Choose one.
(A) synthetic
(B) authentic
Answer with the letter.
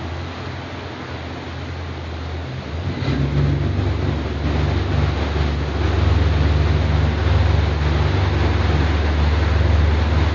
B